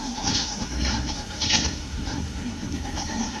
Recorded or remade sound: remade